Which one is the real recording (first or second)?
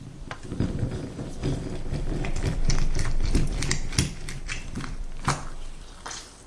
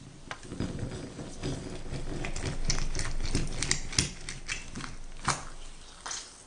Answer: second